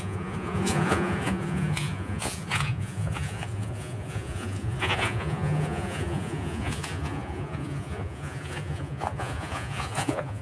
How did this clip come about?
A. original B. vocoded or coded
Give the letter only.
B